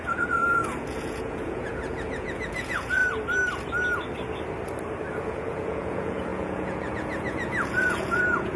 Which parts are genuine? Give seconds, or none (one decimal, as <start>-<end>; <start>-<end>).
3.0-5.1